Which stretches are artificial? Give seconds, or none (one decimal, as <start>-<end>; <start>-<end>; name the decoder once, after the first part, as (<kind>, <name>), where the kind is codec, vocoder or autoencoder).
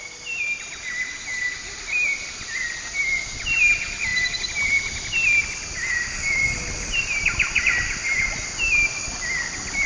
none